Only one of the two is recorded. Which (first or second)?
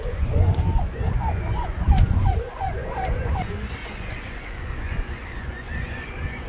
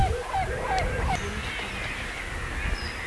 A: second